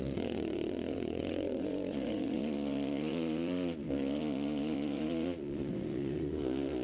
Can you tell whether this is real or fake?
fake